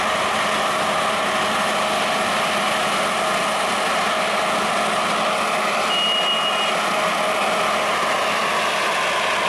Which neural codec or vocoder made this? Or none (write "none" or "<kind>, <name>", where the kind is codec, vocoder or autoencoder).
none